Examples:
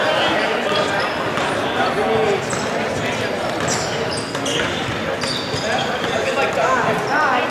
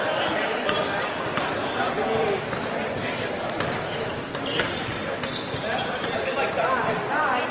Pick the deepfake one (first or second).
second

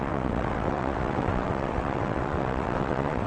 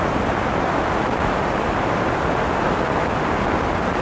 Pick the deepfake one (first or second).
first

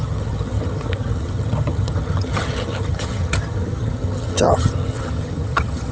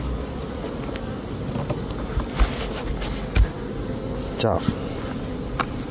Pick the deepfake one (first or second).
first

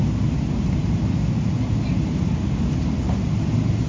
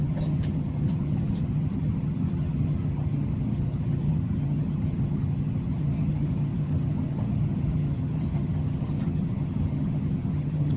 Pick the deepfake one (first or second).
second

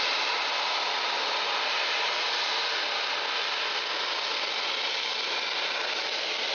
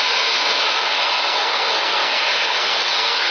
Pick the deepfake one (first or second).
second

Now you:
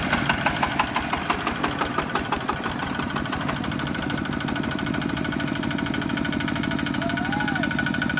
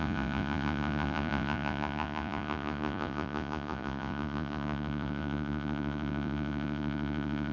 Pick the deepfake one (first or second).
second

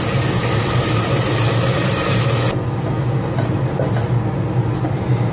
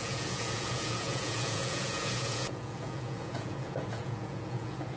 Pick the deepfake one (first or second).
second